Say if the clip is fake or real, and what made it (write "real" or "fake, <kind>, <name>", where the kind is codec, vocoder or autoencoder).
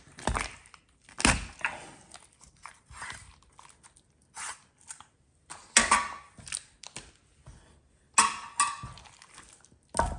real